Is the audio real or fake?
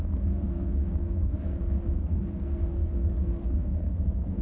fake